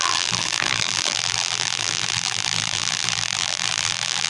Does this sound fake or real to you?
fake